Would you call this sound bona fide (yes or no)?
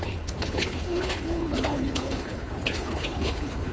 no